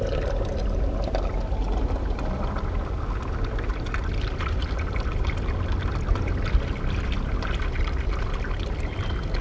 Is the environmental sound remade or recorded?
recorded